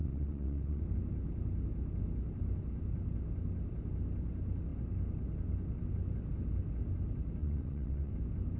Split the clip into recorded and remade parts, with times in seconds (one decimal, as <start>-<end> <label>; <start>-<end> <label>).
0.0-0.8 remade; 0.8-7.4 recorded; 7.4-8.1 remade; 8.1-8.6 recorded